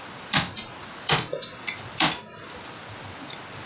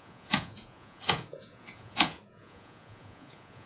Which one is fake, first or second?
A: second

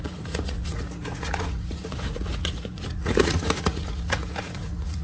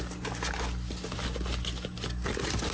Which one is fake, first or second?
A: first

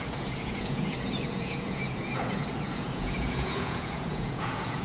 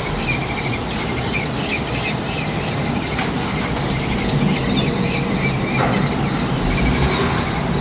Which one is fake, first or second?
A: first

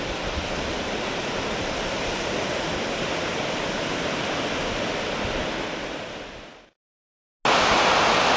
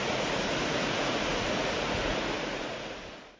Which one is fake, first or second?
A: second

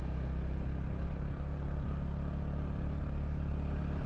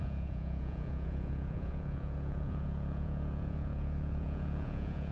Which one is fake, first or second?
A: second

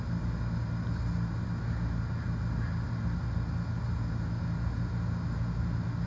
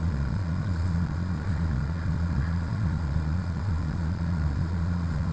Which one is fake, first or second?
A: second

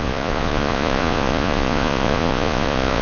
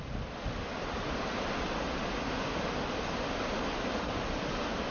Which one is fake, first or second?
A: first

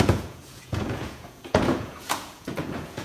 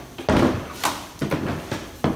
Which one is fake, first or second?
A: first